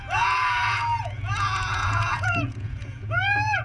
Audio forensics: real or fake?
fake